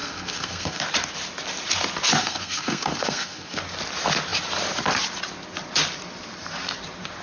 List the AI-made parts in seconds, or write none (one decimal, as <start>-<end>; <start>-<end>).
0.0-0.8; 2.2-3.6